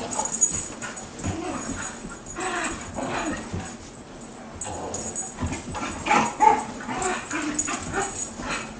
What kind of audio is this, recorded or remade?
recorded